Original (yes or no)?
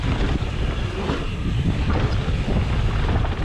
yes